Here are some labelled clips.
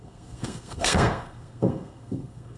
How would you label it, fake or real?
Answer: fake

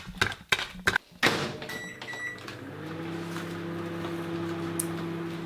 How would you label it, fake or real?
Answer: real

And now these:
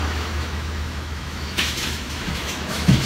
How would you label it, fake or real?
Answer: fake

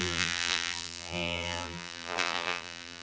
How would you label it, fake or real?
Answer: fake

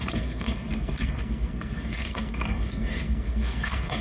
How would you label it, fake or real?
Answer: fake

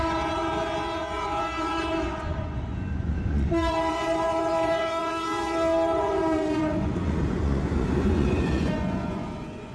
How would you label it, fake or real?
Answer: fake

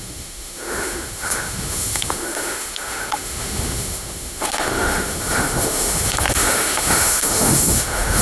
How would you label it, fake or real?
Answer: fake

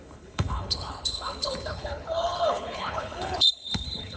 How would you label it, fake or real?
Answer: fake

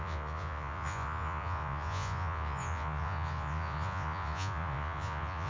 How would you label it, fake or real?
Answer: fake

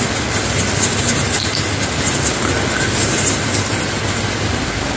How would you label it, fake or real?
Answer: real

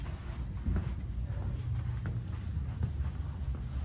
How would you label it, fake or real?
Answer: real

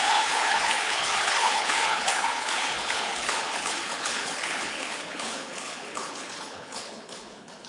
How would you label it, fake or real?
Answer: fake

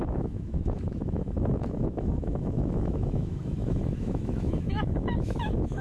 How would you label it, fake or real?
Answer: fake